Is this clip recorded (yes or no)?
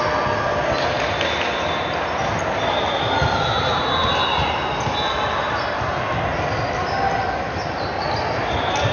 yes